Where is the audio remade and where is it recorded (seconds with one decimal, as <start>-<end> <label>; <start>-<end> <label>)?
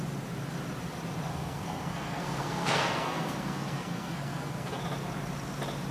0.0-1.3 recorded; 1.3-4.8 remade; 4.8-5.9 recorded